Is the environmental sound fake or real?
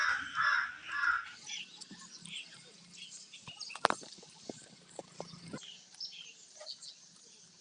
real